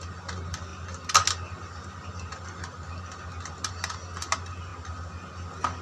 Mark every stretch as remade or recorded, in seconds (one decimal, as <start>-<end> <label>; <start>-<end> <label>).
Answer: 0.0-5.8 recorded